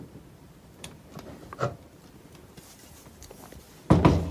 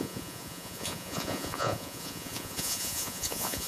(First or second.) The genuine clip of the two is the first